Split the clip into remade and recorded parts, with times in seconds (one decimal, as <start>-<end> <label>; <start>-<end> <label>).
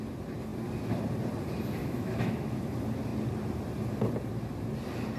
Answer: 0.0-1.8 recorded; 1.8-2.6 remade; 2.6-5.2 recorded